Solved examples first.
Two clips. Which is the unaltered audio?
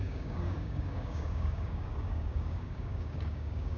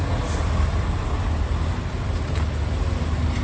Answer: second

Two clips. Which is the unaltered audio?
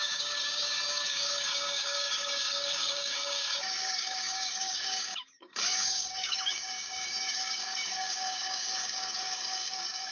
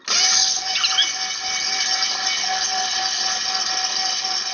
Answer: second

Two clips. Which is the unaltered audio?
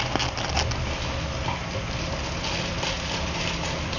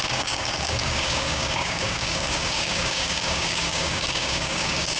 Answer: first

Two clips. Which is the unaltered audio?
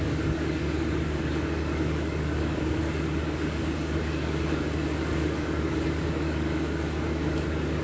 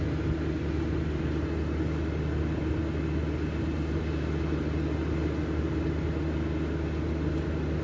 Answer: second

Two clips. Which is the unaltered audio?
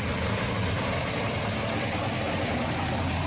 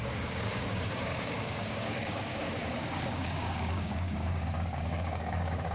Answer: first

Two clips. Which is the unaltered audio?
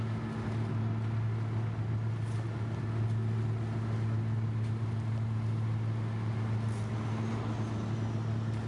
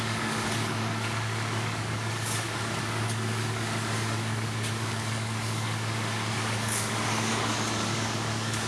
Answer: first